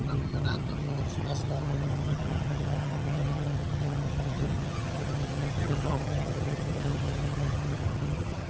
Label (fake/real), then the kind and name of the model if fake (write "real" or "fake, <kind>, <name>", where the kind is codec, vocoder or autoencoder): fake, vocoder, HiFi-GAN